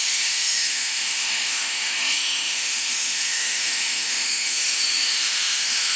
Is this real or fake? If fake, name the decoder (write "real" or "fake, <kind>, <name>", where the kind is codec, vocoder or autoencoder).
fake, autoencoder, DAC-VAE